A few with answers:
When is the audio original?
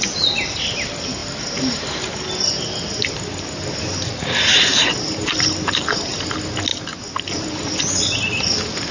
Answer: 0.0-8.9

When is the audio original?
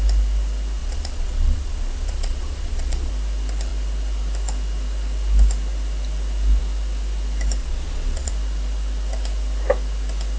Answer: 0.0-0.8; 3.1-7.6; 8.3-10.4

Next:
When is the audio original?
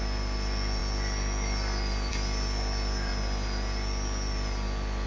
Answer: 0.0-5.1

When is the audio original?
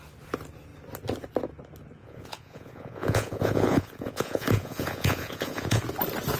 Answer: 0.0-2.0; 5.8-6.4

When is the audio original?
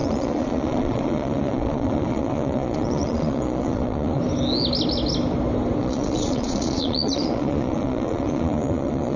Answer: 4.2-5.8